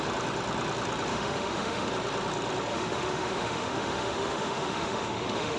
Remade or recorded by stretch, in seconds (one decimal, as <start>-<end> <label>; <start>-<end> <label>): 0.0-1.1 recorded; 1.1-1.9 remade; 1.9-2.7 recorded; 2.7-5.6 remade